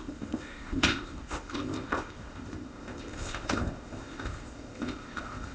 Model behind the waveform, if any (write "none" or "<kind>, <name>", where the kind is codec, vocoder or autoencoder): codec, ZipCodec